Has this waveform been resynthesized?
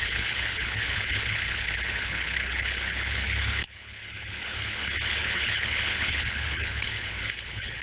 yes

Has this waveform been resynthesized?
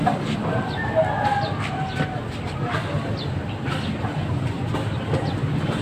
no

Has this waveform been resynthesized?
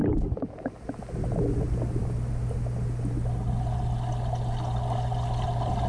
no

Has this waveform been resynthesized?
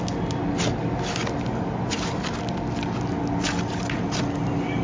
no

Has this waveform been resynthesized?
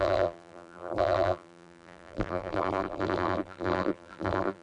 yes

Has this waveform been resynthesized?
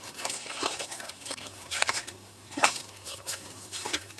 yes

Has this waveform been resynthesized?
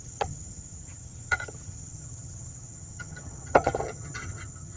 yes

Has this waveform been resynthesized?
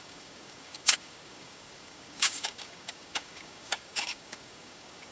yes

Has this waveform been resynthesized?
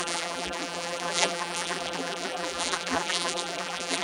yes